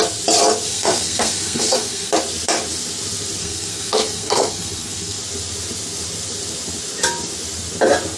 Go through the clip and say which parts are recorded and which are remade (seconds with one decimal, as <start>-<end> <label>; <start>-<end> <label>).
0.0-0.7 recorded; 0.7-2.1 remade; 2.1-3.4 recorded; 3.4-5.2 remade; 5.2-8.2 recorded